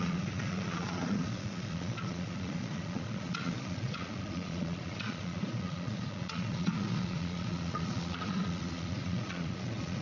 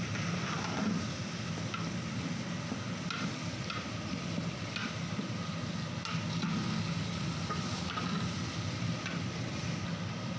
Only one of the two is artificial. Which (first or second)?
first